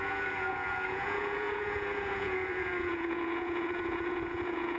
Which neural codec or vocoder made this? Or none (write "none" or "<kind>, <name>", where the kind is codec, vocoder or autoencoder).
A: vocoder, Vocos